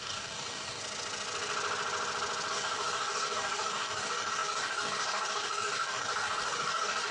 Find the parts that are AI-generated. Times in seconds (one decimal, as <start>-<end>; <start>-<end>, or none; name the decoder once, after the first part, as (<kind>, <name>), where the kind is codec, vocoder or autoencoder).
0.0-0.8 (codec, DAC); 2.5-7.1